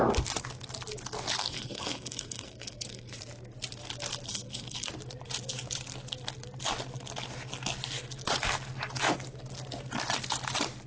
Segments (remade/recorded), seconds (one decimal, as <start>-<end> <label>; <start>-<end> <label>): 0.0-1.4 recorded; 1.4-3.2 remade; 3.2-4.3 recorded; 4.3-4.9 remade; 4.9-10.9 recorded